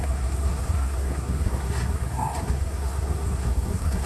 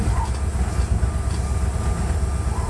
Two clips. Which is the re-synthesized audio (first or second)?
first